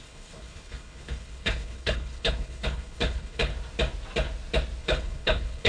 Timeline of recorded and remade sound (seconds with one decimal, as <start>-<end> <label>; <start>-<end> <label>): 0.0-3.5 remade; 3.5-4.8 recorded; 4.8-5.7 remade